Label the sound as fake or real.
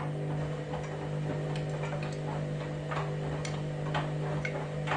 real